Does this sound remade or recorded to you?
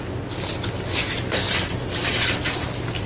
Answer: recorded